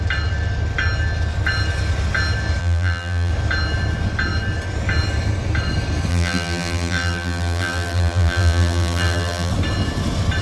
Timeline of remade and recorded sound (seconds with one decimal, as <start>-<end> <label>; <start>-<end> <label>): 0.0-2.6 recorded; 2.6-3.3 remade; 3.3-6.1 recorded; 6.1-9.5 remade; 9.5-10.4 recorded

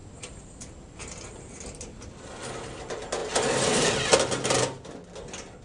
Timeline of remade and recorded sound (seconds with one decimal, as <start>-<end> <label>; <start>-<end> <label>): 0.0-1.6 remade; 1.6-5.6 recorded

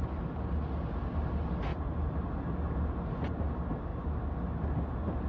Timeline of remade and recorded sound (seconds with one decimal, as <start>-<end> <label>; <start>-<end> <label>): 0.0-1.7 recorded; 1.7-2.3 remade; 2.3-5.3 recorded

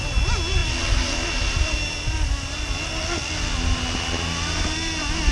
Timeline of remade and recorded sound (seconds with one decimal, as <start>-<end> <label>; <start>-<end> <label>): 0.0-5.3 recorded